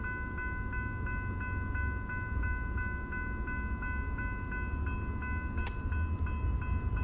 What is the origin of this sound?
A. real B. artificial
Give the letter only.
A